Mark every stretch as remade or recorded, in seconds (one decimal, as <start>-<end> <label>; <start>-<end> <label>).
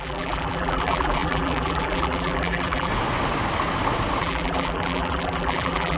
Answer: 0.0-2.9 remade; 2.9-4.2 recorded; 4.2-6.0 remade